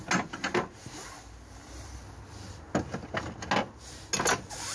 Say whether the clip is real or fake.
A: real